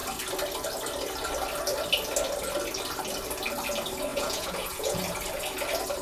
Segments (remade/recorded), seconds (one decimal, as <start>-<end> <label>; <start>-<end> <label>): 0.0-4.1 recorded; 4.1-5.0 remade; 5.0-6.0 recorded